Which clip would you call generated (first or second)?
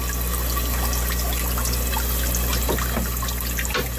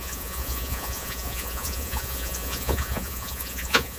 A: second